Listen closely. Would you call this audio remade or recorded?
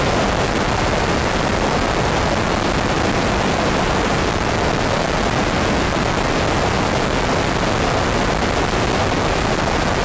recorded